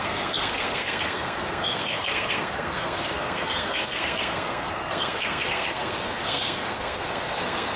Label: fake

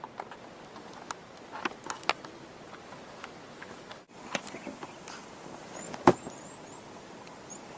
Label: real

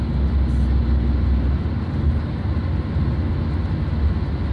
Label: real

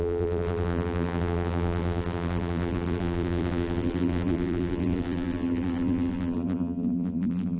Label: fake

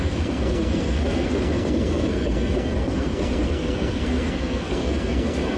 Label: fake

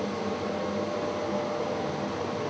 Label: real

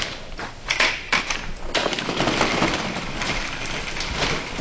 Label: fake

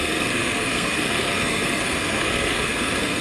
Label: fake